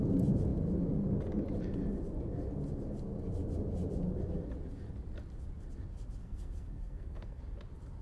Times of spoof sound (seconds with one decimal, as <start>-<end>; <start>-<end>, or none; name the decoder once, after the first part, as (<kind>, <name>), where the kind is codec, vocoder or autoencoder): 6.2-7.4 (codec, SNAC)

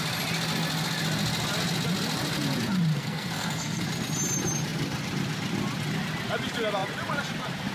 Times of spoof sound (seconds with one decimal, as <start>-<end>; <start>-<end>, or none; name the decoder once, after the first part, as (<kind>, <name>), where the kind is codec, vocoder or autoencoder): 2.9-3.8 (codec, SNAC)

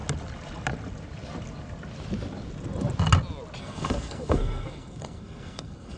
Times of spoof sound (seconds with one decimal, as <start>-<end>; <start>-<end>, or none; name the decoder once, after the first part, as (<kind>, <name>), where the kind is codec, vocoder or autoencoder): 3.6-6.0 (codec, SNAC)